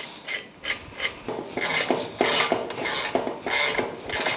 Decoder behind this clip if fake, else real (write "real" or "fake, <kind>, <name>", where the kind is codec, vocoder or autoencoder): real